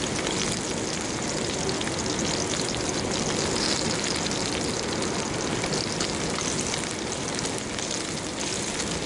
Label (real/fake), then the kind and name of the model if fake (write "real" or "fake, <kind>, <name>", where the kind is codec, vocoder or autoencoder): real